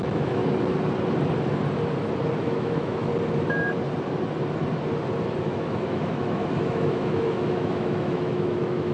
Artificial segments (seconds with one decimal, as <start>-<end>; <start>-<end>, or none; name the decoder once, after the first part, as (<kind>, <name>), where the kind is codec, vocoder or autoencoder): 0.0-0.4 (autoencoder, DAC-VAE); 2.4-3.1; 5.4-8.9

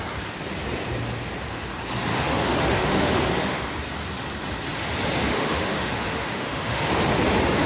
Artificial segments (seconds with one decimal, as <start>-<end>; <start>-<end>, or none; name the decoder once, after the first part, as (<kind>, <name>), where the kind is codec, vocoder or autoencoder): 2.1-3.6 (autoencoder, DAC-VAE); 5.3-6.9